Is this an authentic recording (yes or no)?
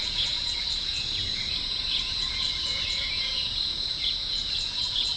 no